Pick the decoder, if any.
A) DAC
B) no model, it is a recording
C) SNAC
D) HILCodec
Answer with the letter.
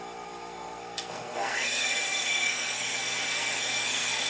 C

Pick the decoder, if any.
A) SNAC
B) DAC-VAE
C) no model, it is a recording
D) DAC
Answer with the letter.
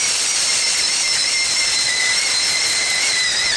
C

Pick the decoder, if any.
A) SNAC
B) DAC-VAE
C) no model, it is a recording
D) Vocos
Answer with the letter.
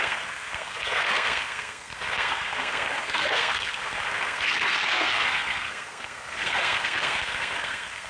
A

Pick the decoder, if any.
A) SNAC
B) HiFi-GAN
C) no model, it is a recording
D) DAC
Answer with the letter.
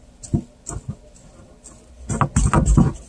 C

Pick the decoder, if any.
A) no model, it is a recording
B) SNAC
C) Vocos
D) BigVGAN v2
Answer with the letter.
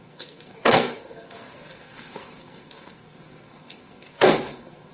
B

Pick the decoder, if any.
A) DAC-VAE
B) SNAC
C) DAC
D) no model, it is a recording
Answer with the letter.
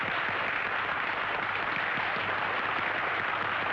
D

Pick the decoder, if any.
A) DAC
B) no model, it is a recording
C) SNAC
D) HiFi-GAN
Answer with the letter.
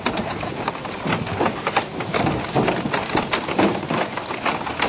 B